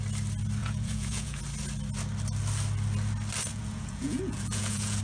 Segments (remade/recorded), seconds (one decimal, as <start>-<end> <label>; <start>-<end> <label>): 0.0-0.6 recorded; 0.6-1.4 remade; 1.4-3.5 recorded; 3.5-5.0 remade